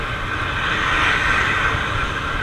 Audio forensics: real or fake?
real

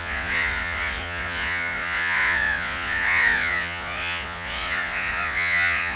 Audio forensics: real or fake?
fake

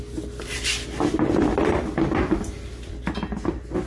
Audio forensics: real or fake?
real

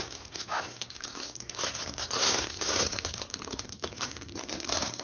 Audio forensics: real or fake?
fake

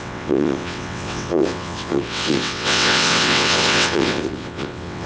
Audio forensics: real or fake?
fake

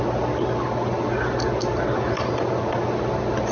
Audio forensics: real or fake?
real